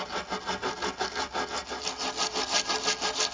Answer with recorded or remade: recorded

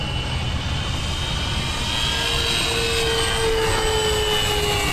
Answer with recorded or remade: recorded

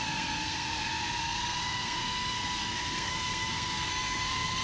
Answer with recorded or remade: remade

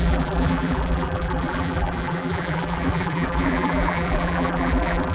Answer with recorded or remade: remade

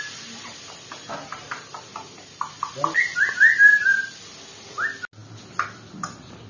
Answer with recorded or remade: recorded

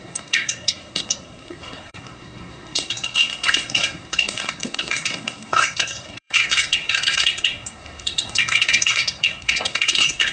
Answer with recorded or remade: remade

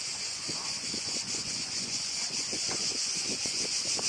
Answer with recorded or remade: remade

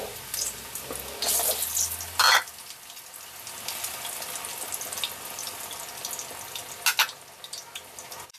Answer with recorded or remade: recorded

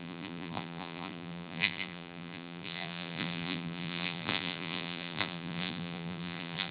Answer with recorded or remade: remade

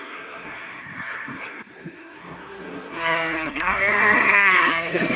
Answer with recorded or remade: remade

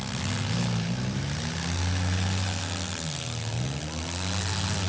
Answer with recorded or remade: recorded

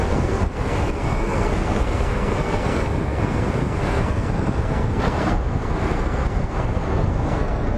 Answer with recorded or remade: remade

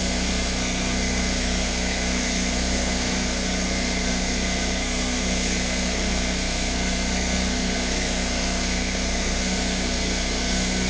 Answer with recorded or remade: remade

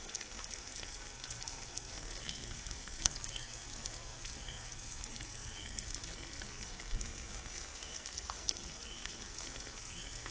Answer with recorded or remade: remade